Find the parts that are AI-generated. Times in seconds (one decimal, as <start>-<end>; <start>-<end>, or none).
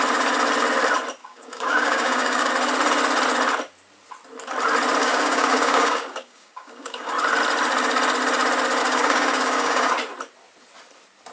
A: 1.2-2.5; 5.0-7.1; 8.8-9.9